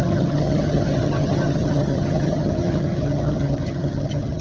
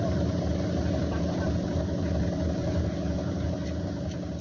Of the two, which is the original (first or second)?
second